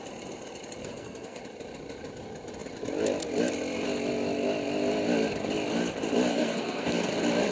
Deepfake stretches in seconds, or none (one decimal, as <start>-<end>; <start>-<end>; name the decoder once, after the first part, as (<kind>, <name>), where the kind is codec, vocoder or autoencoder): 0.8-1.4 (codec, SNAC); 6.3-7.1